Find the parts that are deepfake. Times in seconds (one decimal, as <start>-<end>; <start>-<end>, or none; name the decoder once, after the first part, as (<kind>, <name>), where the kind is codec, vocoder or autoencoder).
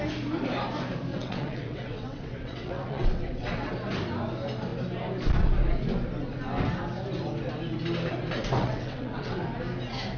1.1-3.7 (vocoder, WaveNeXt); 8.6-9.4